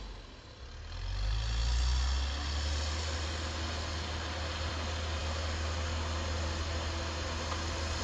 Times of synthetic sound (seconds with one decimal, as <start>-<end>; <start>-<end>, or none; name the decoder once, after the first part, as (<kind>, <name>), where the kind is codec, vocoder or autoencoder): none